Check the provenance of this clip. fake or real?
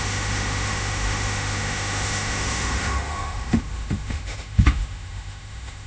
fake